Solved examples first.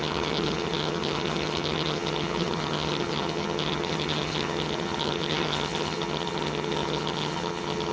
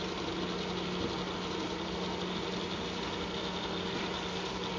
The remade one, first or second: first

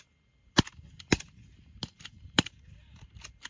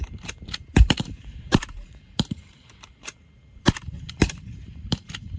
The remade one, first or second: second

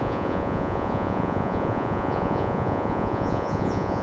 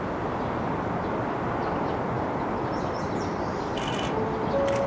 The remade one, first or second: first